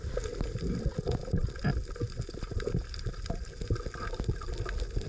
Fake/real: real